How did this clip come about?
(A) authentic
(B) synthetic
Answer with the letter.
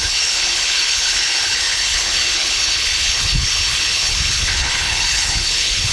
B